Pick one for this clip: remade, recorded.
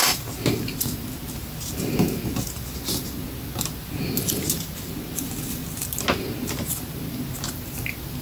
recorded